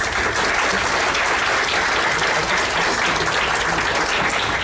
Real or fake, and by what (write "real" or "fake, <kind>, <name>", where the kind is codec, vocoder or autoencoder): real